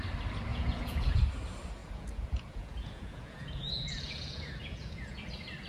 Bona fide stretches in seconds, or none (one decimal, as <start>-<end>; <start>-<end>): 0.0-0.5; 1.2-1.8; 5.2-5.7